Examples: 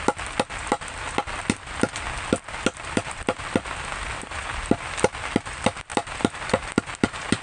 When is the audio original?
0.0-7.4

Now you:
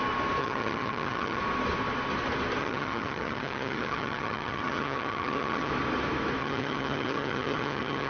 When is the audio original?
0.0-0.4; 1.4-2.6; 5.7-6.4

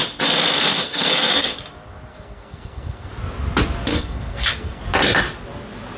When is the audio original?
0.0-0.6; 1.5-2.1; 3.1-3.9; 4.8-6.0

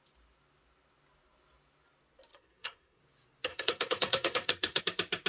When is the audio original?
0.0-2.3; 3.0-3.5; 4.8-5.3

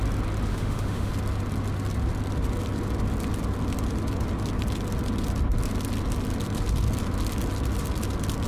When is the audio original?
0.0-0.5; 1.1-8.5

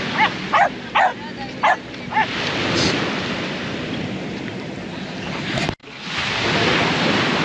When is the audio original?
0.0-7.4

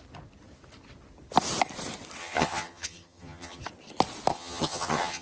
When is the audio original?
0.0-2.2; 3.6-4.3